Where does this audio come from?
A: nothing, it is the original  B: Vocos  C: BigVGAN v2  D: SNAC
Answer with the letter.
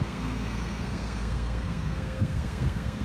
D